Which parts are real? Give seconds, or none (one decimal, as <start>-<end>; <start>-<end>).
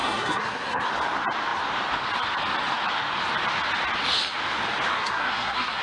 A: 0.9-4.9